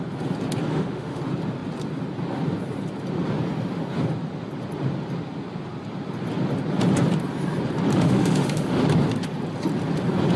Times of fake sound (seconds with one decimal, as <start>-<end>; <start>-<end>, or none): 0.7-1.2; 7.9-8.8